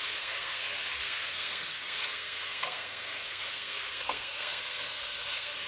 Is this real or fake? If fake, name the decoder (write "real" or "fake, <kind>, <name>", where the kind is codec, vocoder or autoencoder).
fake, codec, SNAC